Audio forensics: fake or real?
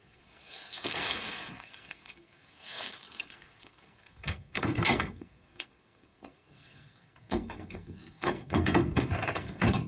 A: fake